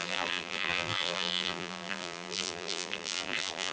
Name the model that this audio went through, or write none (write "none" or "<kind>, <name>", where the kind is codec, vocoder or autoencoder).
vocoder, BigVGAN v2